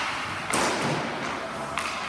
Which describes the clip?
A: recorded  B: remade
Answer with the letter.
A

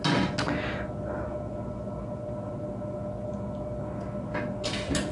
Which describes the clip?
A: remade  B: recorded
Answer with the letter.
B